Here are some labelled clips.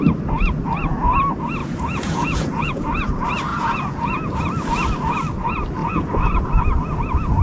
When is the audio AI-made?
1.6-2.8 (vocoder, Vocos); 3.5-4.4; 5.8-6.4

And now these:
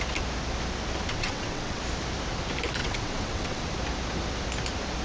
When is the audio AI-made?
1.1-1.8 (vocoder, WaveNeXt); 2.8-3.7

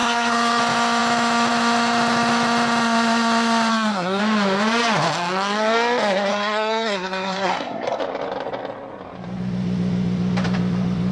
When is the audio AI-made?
0.0-0.6 (codec, SNAC); 3.7-4.2; 6.3-8.0

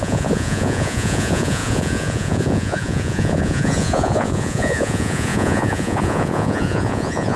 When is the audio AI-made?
0.0-7.4 (vocoder, Vocos)

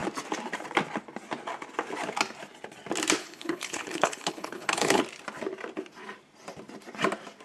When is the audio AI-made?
3.2-5.0 (codec, HILCodec)

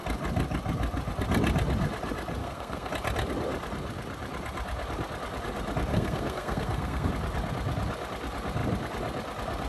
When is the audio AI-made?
2.4-2.9 (codec, SNAC); 5.9-7.1

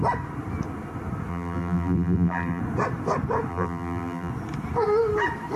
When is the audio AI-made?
1.3-2.6 (vocoder, BigVGAN v2); 3.5-4.3